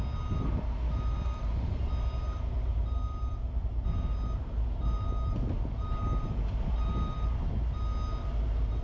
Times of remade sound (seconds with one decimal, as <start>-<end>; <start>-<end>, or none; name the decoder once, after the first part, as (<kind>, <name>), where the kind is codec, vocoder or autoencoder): none